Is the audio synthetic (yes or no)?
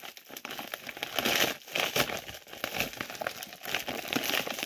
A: no